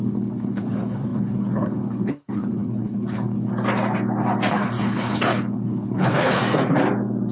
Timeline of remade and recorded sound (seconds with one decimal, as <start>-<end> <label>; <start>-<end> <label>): 0.0-3.5 remade; 3.5-4.5 recorded; 4.5-6.4 remade; 6.4-7.3 recorded